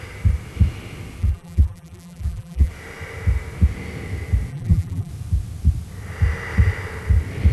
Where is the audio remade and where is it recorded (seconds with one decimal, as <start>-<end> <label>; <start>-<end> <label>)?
0.0-1.2 recorded; 1.2-2.7 remade; 2.7-4.5 recorded; 4.5-5.1 remade; 5.1-7.5 recorded

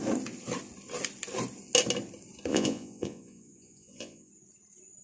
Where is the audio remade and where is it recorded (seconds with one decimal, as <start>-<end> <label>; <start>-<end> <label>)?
0.0-2.5 recorded; 2.5-4.3 remade; 4.3-5.0 recorded